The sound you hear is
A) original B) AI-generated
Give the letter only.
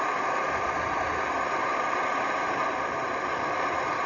A